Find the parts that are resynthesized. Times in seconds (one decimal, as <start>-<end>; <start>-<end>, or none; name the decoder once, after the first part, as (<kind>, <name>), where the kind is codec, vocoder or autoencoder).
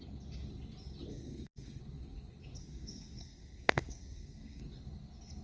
1.1-1.8 (codec, SNAC); 2.6-4.6